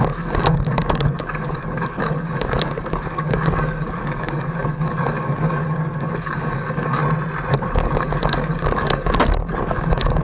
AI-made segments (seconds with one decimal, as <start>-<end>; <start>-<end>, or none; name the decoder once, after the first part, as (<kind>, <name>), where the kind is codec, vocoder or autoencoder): 0.0-7.0 (codec, DAC); 7.5-10.2